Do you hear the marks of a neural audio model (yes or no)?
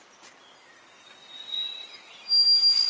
no